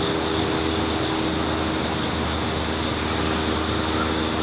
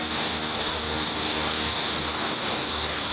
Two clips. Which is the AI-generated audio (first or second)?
second